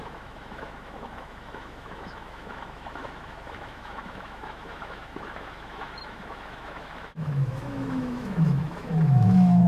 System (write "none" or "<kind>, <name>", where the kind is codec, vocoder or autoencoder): autoencoder, DAC-VAE